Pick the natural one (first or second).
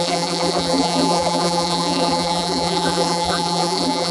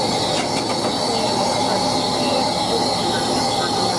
second